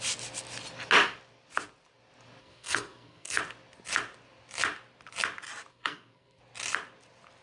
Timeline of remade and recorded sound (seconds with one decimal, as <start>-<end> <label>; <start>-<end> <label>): 0.0-2.4 recorded; 2.4-3.4 remade; 3.4-5.7 recorded; 5.7-6.4 remade; 6.4-7.4 recorded